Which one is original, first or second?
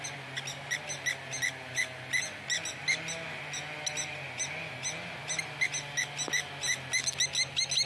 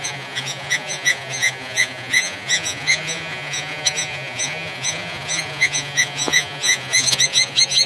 first